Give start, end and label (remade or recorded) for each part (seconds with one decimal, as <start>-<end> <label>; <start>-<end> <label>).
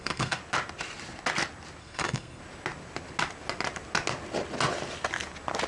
0.0-0.4 remade; 0.4-1.8 recorded; 1.8-2.4 remade; 2.4-5.7 recorded